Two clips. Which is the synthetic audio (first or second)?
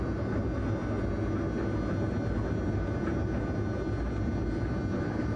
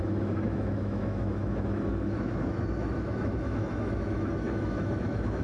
second